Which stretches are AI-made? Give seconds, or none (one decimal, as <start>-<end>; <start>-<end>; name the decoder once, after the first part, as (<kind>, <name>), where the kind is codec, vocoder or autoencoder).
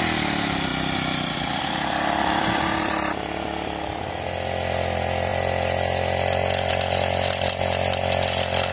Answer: none